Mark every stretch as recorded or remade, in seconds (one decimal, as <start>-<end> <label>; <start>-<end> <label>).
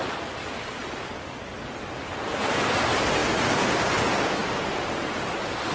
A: 0.0-4.4 recorded; 4.4-5.0 remade; 5.0-5.7 recorded